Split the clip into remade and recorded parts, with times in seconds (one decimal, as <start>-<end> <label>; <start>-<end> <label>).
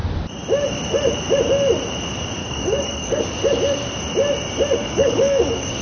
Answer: 0.0-2.4 recorded; 2.4-3.2 remade; 3.2-4.8 recorded; 4.8-5.8 remade